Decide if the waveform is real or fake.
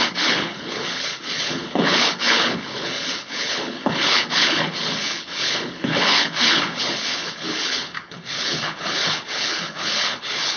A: fake